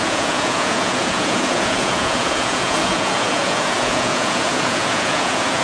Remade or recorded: remade